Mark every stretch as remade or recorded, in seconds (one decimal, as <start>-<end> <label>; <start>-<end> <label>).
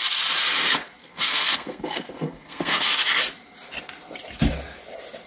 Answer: 0.0-1.0 recorded; 1.0-2.9 remade; 2.9-5.3 recorded